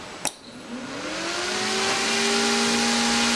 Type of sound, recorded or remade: recorded